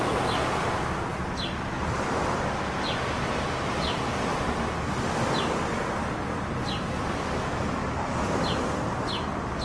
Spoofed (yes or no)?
no